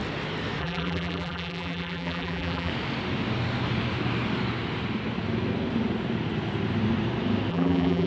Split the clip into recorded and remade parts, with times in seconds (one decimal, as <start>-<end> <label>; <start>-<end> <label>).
0.0-0.6 recorded; 0.6-2.7 remade; 2.7-7.5 recorded; 7.5-8.1 remade